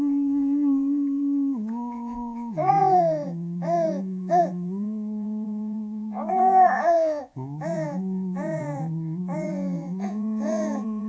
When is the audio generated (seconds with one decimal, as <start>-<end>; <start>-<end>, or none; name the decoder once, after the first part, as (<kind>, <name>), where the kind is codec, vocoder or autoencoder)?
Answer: 0.0-11.1 (vocoder, Vocos)